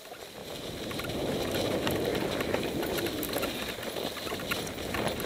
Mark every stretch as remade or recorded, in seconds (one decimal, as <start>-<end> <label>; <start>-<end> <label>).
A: 0.0-5.3 recorded